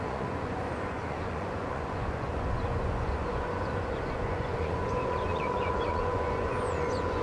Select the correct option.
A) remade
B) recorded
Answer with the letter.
A